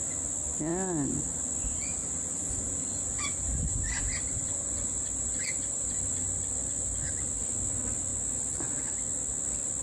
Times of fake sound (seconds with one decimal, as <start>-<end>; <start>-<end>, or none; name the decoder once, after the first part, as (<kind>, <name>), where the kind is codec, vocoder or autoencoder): 0.0-0.7 (vocoder, BigVGAN v2); 1.4-6.6; 7.4-8.1; 9.4-9.8